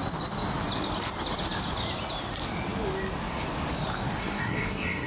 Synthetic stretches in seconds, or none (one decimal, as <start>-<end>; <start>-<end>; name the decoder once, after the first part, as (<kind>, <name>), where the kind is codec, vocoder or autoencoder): 4.2-5.1 (codec, SNAC)